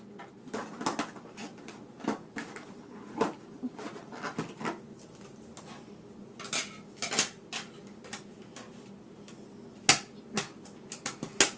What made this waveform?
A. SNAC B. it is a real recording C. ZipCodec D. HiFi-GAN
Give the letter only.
B